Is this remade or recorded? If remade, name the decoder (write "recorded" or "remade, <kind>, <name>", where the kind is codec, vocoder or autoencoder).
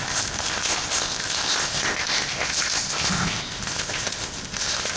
remade, codec, ZipCodec